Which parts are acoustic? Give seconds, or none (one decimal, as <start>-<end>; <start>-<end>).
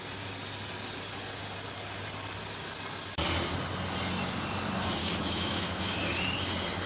0.0-5.0; 6.0-6.9